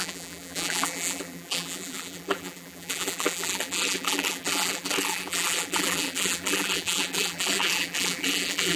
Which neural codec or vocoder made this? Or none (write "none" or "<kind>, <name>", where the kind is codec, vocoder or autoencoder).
vocoder, BigVGAN v2